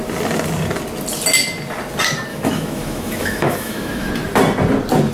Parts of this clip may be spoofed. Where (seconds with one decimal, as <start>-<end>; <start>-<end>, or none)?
2.3-4.1